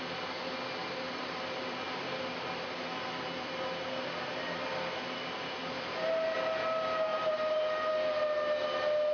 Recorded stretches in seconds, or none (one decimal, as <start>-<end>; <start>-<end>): 0.0-7.1; 7.9-9.1